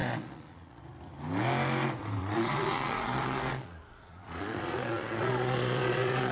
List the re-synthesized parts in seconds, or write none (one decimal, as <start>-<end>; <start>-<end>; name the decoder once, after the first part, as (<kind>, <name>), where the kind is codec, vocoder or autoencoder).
0.0-0.8 (vocoder, Vocos); 2.2-6.3